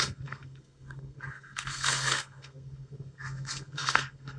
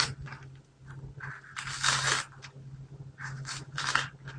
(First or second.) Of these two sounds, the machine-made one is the first